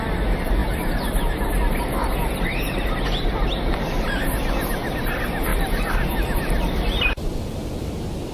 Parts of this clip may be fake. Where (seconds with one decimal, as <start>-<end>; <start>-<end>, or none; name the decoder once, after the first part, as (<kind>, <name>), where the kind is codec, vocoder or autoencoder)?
0.6-1.8 (vocoder, BigVGAN v2); 5.5-7.9

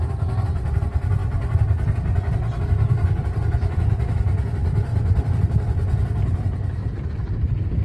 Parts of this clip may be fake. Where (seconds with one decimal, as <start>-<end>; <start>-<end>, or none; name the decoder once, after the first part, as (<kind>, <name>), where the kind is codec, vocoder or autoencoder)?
4.9-5.4 (vocoder, BigVGAN v2); 6.8-7.8